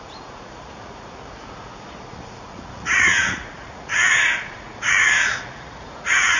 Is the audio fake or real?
fake